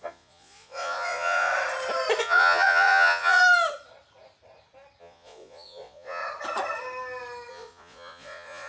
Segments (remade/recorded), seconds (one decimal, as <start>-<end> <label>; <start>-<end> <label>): 0.0-1.5 remade; 1.5-2.2 recorded; 2.2-3.4 remade; 3.4-5.0 recorded; 5.0-6.2 remade; 6.2-7.5 recorded; 7.5-8.7 remade